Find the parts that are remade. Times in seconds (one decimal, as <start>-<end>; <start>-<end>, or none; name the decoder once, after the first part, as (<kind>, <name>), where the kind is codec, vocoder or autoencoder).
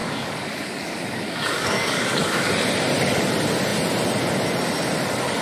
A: 0.0-2.5 (codec, DAC)